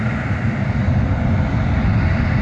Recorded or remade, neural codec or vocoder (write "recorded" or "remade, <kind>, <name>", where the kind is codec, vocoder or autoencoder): recorded